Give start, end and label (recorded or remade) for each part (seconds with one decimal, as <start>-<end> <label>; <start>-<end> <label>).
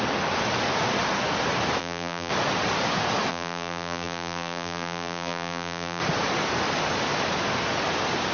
0.0-1.8 recorded; 1.8-2.3 remade; 2.3-3.3 recorded; 3.3-6.0 remade; 6.0-8.3 recorded